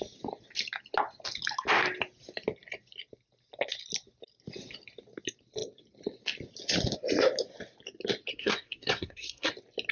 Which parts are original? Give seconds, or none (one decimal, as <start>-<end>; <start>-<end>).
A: 0.0-8.3; 9.5-9.9